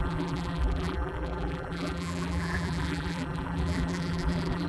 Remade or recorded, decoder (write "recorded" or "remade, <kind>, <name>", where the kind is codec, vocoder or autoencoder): remade, vocoder, BigVGAN v2